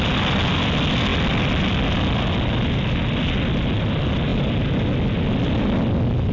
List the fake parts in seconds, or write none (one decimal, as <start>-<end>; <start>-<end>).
none

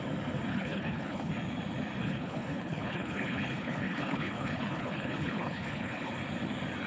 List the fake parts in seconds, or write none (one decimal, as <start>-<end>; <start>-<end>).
0.5-1.3; 2.0-6.1

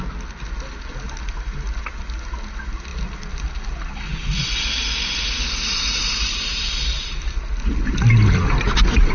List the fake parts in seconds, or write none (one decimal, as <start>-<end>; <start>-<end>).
none

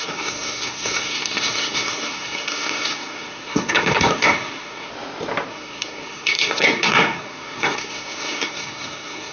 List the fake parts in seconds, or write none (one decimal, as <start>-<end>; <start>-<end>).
0.0-4.9; 5.5-9.3

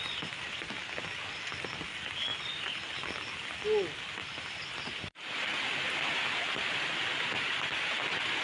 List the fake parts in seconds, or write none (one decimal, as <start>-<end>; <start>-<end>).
none

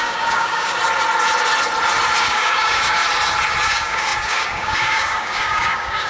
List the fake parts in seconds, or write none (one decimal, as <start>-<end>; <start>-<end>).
0.0-0.8; 2.2-3.0; 3.6-6.1